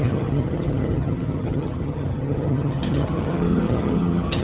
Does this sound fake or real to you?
fake